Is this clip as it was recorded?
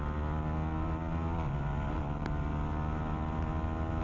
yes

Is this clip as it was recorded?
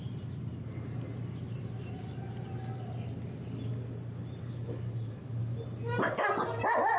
yes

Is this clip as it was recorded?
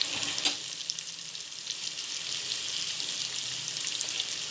yes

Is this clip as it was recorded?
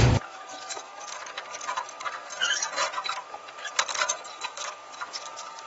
no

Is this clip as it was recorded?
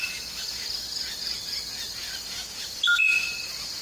yes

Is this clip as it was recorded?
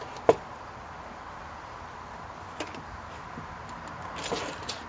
yes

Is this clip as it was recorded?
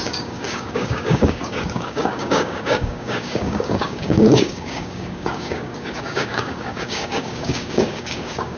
no